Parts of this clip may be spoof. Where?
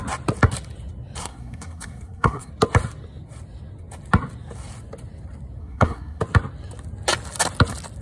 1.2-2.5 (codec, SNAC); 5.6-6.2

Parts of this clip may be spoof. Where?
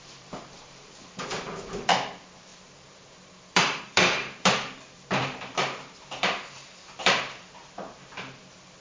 0.0-8.8 (vocoder, BigVGAN v2)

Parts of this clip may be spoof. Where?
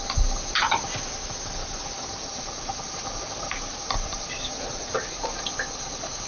1.6-5.4 (vocoder, BigVGAN v2)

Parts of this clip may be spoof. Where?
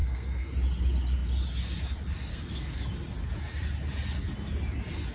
0.0-0.5 (codec, SNAC); 2.3-2.9